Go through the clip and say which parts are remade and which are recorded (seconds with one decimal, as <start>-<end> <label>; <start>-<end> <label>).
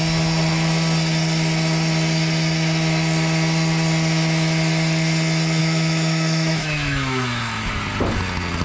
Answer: 0.0-5.6 recorded; 5.6-7.7 remade; 7.7-8.6 recorded